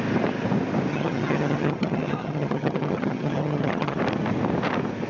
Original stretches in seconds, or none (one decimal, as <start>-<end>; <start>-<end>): 0.0-0.9; 4.0-5.1